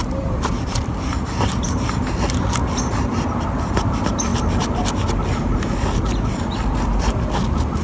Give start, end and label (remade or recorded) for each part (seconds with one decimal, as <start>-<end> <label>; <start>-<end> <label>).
0.0-1.5 remade; 1.5-7.8 recorded

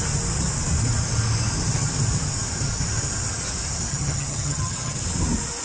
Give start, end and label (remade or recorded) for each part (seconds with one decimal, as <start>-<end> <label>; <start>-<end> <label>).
0.0-3.9 recorded; 3.9-5.0 remade; 5.0-5.6 recorded

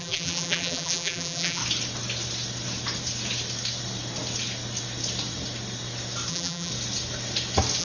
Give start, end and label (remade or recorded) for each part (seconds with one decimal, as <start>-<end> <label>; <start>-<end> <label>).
0.0-1.6 remade; 1.6-6.3 recorded; 6.3-6.7 remade; 6.7-7.8 recorded

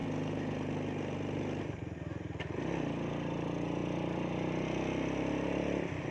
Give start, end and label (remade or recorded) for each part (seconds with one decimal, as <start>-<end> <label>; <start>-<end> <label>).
0.0-6.1 recorded

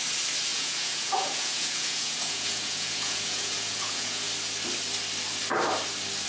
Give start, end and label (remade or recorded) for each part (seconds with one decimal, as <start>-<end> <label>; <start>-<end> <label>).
0.0-0.5 recorded; 0.5-4.3 remade; 4.3-6.3 recorded

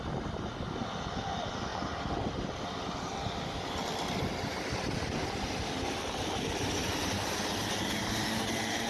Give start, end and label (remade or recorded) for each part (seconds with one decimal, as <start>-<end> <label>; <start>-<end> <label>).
0.0-1.7 recorded; 1.7-2.3 remade; 2.3-8.9 recorded